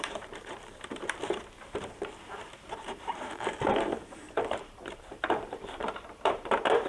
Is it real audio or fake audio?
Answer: fake